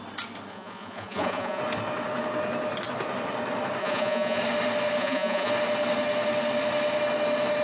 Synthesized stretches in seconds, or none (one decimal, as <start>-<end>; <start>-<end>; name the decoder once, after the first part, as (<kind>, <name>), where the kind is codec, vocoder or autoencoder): 0.5-1.6 (vocoder, Vocos); 3.8-4.4; 5.0-5.5